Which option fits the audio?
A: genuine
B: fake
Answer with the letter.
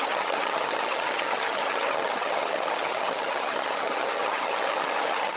B